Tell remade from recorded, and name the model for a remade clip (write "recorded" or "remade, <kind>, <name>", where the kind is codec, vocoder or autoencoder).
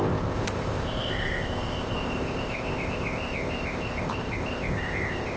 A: remade, codec, ZipCodec